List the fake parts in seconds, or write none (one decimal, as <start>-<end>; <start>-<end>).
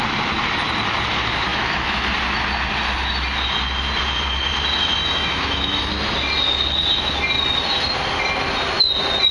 1.5-2.1; 5.0-5.9